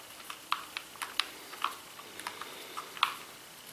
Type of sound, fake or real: real